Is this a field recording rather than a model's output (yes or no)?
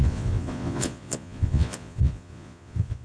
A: no